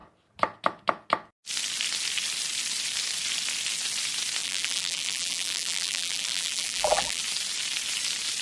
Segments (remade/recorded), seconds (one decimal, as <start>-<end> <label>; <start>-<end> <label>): 0.0-4.4 recorded; 4.4-7.2 remade; 7.2-8.4 recorded